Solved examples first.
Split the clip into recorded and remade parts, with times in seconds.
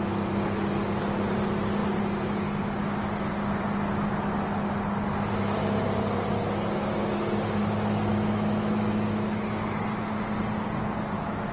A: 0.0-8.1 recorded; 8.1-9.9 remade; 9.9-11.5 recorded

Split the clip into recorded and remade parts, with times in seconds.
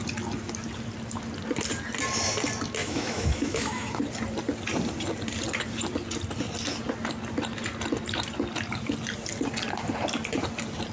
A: 0.0-2.8 recorded; 2.8-4.0 remade; 4.0-10.9 recorded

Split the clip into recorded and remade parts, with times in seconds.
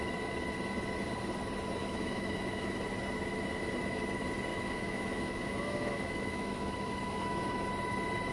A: 0.0-1.8 recorded; 1.8-2.8 remade; 2.8-4.5 recorded; 4.5-7.7 remade; 7.7-8.3 recorded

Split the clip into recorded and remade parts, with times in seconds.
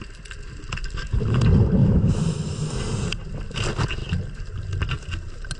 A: 0.0-1.8 recorded; 1.8-2.7 remade; 2.7-5.6 recorded